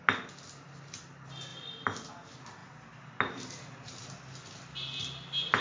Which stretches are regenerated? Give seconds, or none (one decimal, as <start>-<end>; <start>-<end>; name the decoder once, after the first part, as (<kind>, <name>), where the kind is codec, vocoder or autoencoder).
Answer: none